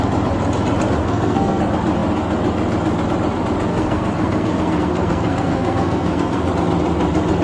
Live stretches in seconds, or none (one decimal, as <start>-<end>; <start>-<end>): 0.0-1.0; 1.6-3.7; 6.5-7.4